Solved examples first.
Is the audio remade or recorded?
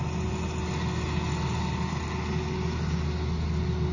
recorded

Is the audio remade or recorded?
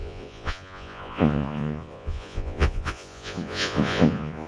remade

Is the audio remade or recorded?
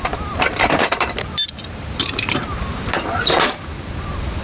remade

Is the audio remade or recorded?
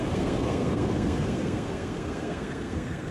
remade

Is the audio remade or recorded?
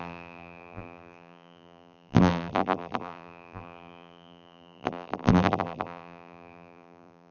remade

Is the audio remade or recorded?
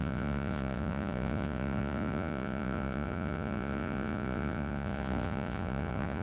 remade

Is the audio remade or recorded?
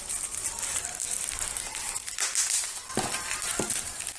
recorded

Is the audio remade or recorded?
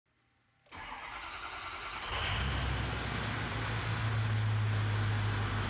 recorded